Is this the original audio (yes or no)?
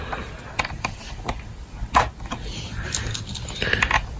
yes